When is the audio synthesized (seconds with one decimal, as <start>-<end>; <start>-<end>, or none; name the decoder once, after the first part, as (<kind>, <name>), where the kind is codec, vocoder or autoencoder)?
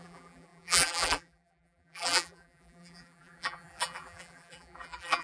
0.0-5.2 (vocoder, BigVGAN v2)